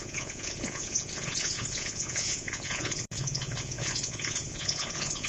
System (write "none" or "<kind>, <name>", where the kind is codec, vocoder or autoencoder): vocoder, Vocos